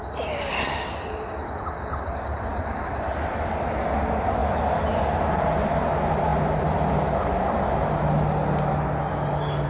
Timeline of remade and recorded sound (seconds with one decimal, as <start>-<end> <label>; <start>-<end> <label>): 0.0-2.5 recorded; 2.5-3.8 remade; 3.8-6.3 recorded; 6.3-7.1 remade; 7.1-9.7 recorded